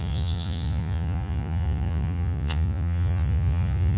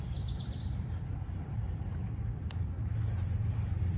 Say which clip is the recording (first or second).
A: second